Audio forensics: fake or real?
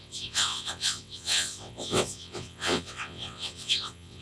fake